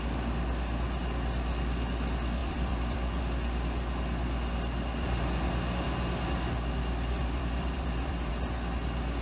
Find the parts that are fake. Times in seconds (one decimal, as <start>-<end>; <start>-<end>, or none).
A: 2.4-3.2; 7.2-8.3